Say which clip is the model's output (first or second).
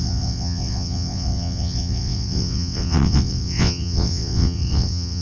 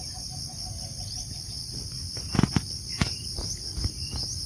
first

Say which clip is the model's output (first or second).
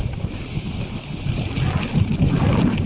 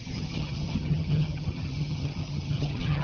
second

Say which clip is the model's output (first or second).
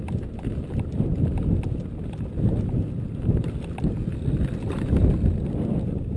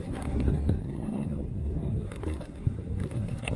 second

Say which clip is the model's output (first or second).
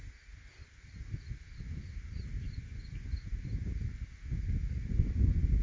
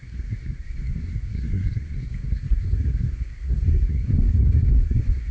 second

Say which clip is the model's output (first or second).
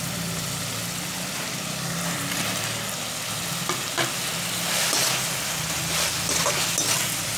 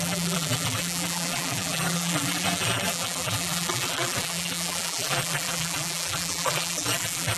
second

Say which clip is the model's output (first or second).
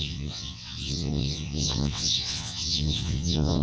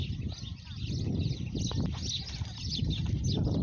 first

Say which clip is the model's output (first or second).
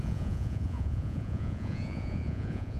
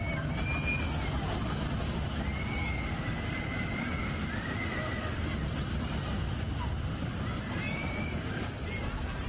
first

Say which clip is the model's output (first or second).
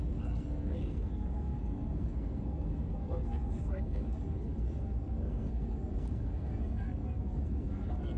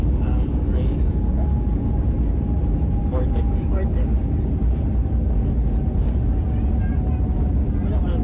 first